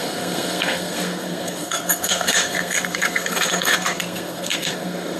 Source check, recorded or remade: remade